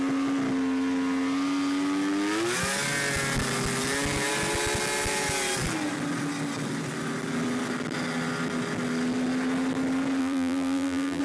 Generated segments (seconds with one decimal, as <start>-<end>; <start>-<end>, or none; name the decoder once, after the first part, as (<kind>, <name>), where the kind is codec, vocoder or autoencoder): 10.2-11.2 (vocoder, BigVGAN v2)